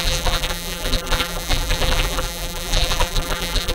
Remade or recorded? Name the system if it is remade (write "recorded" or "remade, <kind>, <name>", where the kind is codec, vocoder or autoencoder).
remade, vocoder, BigVGAN v2